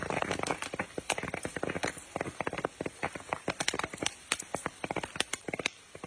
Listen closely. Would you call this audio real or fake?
real